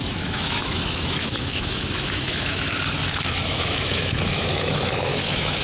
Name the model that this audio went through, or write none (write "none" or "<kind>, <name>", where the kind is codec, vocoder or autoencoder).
autoencoder, DAC-VAE